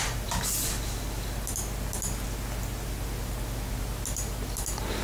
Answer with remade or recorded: recorded